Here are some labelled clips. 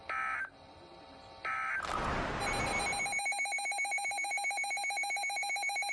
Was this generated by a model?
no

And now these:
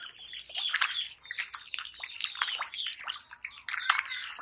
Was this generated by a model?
no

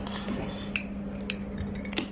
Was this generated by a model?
no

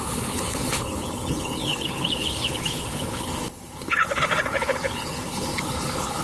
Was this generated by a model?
yes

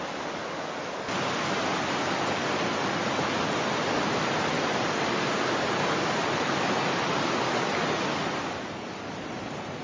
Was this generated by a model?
no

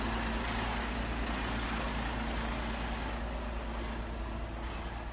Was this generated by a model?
no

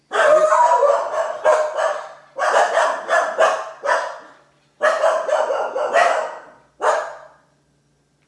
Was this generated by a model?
no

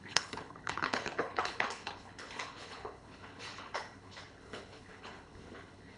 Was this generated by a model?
yes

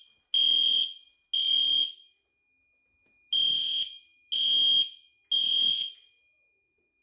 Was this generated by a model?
no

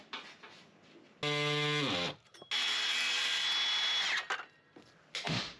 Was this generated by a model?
no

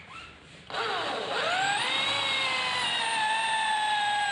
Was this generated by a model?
no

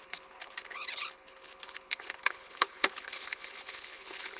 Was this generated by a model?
yes